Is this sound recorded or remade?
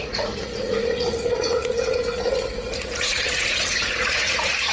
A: remade